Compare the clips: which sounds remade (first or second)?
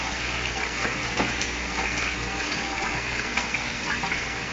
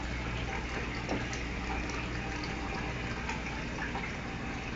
first